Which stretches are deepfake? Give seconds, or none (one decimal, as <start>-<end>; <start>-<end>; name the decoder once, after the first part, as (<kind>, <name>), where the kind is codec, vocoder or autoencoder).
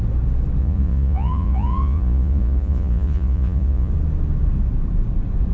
0.6-3.9 (vocoder, Vocos)